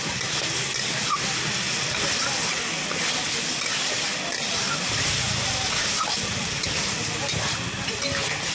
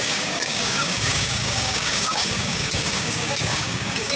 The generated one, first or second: second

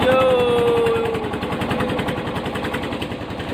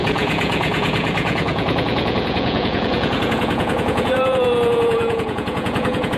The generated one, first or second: second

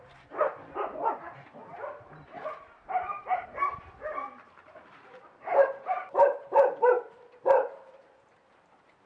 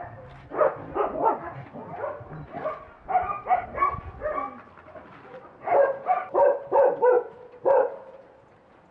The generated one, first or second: first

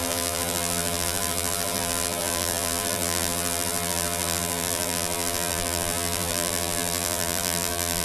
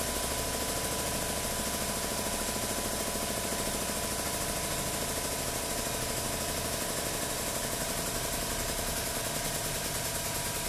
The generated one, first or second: first